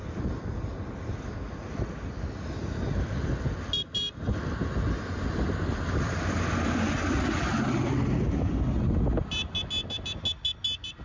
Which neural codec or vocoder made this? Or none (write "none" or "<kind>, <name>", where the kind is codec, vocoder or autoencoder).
none